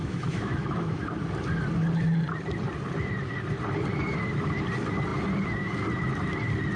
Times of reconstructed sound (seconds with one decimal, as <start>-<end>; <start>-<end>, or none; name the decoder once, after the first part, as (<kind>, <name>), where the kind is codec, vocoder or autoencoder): 0.0-1.0 (autoencoder, DAC-VAE)